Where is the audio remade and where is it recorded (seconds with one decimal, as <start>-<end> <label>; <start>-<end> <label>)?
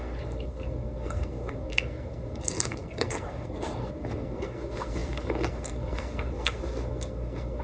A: 0.0-7.6 remade